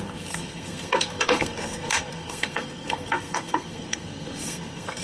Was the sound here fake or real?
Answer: fake